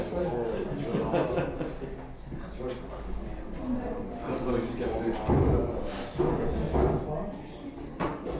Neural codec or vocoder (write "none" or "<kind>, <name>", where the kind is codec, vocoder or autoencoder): none